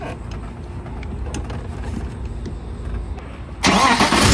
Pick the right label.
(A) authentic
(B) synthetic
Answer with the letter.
A